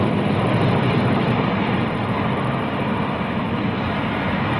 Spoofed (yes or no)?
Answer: no